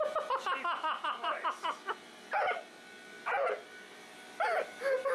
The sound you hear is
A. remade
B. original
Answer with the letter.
B